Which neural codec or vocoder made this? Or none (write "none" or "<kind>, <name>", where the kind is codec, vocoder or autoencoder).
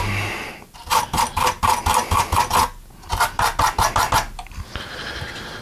none